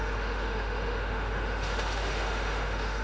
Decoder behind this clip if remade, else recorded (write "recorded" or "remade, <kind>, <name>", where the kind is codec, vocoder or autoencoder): remade, autoencoder, DAC-VAE